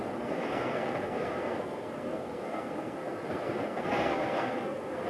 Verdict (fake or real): fake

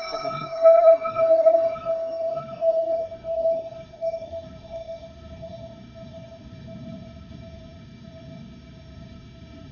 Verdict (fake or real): fake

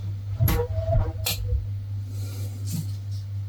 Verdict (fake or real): real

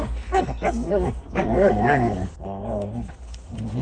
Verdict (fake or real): fake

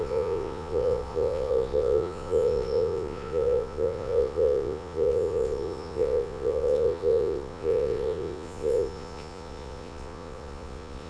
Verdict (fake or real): fake